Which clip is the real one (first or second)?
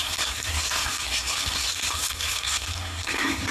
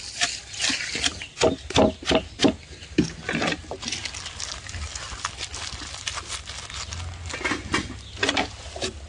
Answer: second